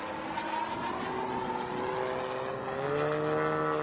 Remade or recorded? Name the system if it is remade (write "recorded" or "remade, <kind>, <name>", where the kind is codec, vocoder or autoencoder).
recorded